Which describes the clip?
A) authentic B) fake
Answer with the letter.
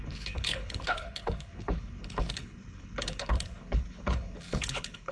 B